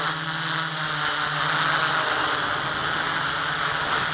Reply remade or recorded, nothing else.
recorded